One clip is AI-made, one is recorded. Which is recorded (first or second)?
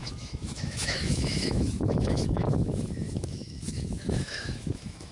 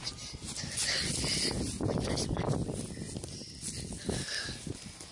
second